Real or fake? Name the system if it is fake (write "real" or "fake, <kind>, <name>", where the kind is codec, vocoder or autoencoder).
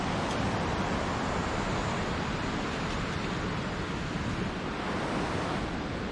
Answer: real